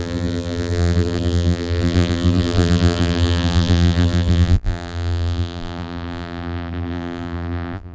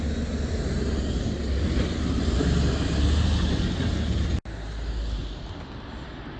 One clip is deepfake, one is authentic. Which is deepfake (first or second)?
first